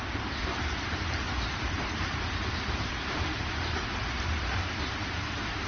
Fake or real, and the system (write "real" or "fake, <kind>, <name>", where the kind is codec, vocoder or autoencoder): fake, vocoder, BigVGAN v2